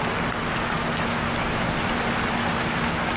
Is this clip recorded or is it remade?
recorded